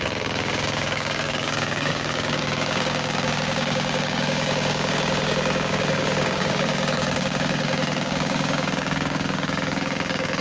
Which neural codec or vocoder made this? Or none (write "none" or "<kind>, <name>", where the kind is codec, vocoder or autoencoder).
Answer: codec, DAC